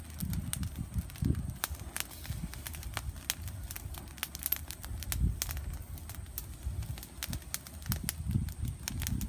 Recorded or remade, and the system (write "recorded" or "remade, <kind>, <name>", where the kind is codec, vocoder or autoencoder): recorded